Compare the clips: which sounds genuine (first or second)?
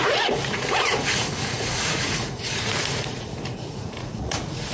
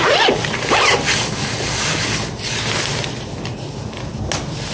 second